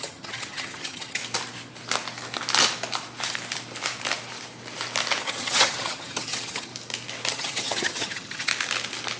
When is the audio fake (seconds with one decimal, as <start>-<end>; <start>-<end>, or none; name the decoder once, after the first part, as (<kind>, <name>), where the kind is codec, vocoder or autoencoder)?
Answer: 0.0-1.2 (vocoder, HiFi-GAN); 5.2-6.7; 7.3-8.5